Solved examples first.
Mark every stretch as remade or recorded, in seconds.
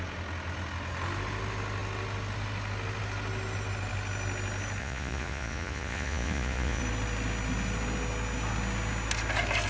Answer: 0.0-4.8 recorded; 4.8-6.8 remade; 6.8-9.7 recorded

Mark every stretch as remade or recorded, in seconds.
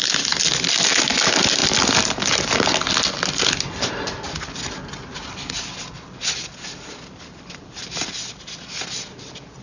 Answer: 0.0-9.6 recorded